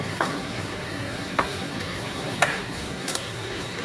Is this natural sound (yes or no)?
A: no